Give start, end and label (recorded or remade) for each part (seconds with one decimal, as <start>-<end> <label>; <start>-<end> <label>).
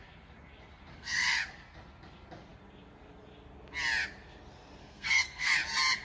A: 0.0-0.9 recorded; 0.9-1.4 remade; 1.4-4.8 recorded; 4.8-5.5 remade; 5.5-6.0 recorded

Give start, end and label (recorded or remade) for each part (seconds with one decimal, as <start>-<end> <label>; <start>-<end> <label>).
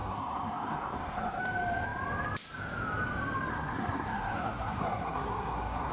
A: 0.0-1.4 remade; 1.4-3.5 recorded; 3.5-5.9 remade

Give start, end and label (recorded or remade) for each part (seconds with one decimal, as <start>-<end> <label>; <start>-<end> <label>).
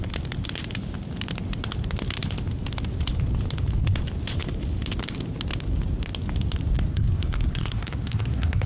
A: 0.0-6.9 recorded; 6.9-8.7 remade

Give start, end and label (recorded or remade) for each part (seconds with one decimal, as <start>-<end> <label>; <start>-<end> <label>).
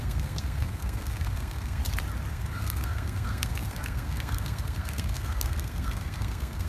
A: 0.0-1.8 remade; 1.8-2.3 recorded; 2.3-6.7 remade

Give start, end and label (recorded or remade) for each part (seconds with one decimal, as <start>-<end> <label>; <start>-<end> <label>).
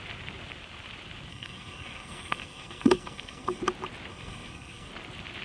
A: 0.0-1.3 recorded; 1.3-3.6 remade; 3.6-4.1 recorded; 4.1-4.9 remade; 4.9-5.4 recorded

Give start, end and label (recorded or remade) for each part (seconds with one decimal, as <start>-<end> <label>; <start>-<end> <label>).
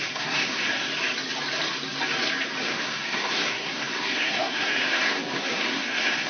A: 0.0-0.9 remade; 0.9-2.6 recorded; 2.6-6.3 remade